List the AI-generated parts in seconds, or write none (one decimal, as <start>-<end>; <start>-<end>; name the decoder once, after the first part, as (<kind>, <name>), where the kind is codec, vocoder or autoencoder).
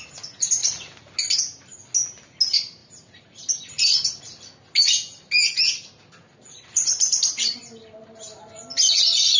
none